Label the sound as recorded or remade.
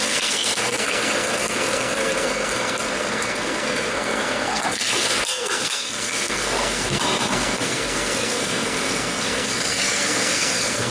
remade